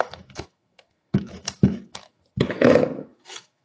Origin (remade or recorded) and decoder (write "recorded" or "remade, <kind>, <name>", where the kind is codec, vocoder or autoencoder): remade, autoencoder, DAC-VAE